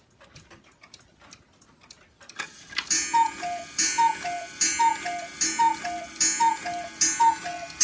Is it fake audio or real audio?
real